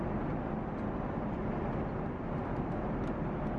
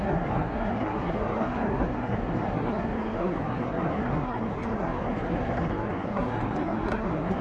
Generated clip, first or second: second